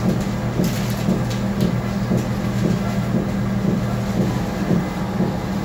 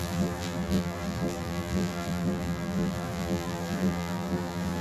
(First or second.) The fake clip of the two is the second